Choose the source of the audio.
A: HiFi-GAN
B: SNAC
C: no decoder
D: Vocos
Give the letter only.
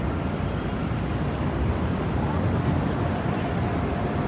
C